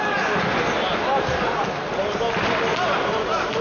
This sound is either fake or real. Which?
real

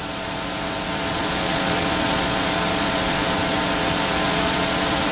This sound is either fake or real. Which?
fake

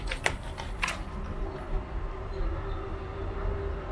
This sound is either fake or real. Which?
real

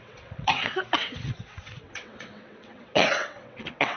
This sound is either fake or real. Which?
fake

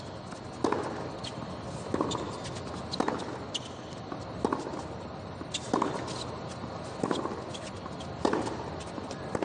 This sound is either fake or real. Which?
real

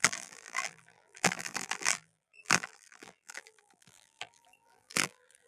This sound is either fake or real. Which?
fake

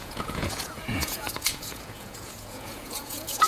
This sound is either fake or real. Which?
fake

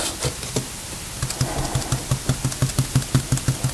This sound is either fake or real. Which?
real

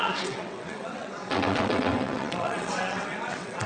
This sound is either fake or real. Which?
fake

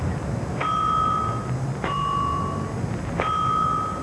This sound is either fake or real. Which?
real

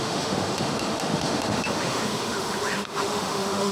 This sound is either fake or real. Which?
fake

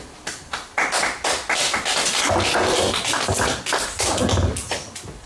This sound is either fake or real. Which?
real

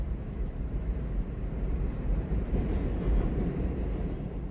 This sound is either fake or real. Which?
fake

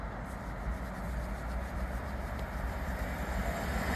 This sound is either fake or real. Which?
real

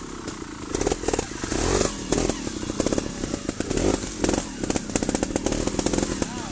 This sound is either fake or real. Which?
real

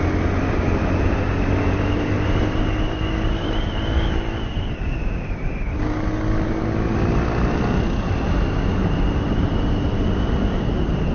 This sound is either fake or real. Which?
real